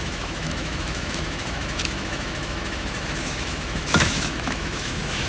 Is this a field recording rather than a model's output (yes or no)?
no